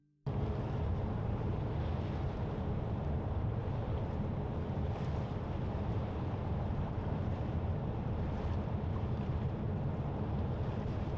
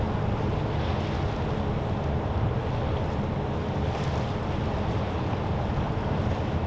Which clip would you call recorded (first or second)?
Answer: second